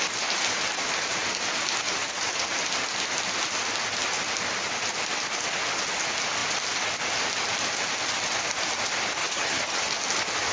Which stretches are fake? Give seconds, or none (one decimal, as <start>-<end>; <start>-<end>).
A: 9.2-9.9

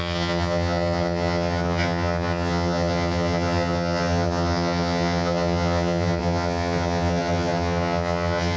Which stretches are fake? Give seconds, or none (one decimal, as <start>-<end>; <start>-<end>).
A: 0.0-8.6

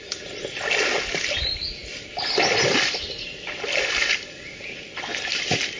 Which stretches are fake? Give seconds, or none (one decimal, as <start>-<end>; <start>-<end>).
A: none

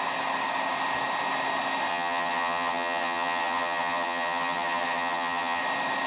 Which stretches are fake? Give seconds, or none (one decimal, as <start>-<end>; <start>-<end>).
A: 1.9-5.6

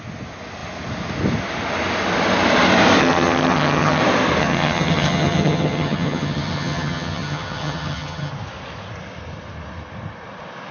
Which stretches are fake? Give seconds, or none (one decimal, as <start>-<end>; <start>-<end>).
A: 3.0-4.0; 4.4-8.3

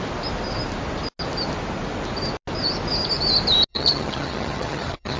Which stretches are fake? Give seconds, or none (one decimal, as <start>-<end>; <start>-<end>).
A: 3.7-5.2

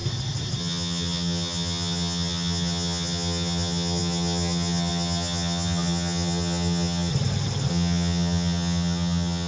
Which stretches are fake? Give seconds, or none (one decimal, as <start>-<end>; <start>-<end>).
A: 0.6-7.1; 7.7-9.5